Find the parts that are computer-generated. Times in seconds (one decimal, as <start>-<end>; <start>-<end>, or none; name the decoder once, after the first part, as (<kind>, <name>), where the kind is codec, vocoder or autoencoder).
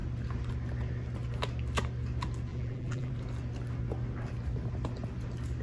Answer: 2.5-3.1 (vocoder, BigVGAN v2)